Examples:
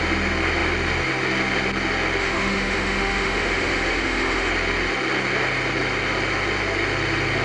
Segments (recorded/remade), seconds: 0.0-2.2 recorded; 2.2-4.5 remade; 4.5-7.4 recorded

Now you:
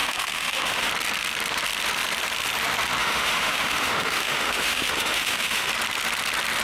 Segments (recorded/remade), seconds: 0.0-0.9 remade; 0.9-3.0 recorded; 3.0-5.7 remade; 5.7-6.6 recorded